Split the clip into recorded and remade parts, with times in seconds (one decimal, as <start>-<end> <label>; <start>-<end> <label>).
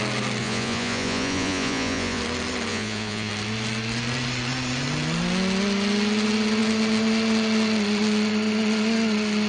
0.0-0.4 recorded; 0.4-2.2 remade; 2.2-2.7 recorded; 2.7-3.3 remade; 3.3-9.5 recorded